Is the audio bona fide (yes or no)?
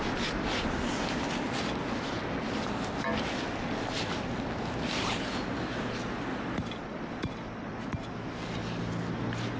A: yes